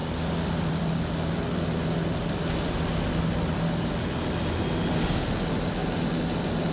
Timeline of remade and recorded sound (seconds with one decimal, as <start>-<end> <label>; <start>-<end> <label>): 0.0-6.7 recorded